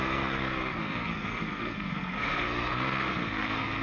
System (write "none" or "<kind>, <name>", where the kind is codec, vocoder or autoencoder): codec, SNAC